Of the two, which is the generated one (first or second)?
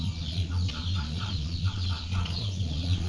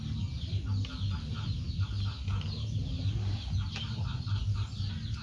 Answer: first